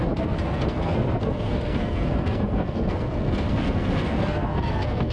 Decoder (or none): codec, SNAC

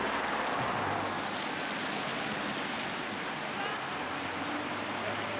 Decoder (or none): none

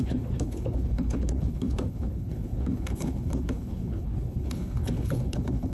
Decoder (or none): codec, HILCodec